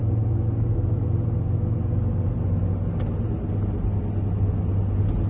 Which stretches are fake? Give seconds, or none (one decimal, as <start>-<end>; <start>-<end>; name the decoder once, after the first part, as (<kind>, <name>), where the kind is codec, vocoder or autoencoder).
none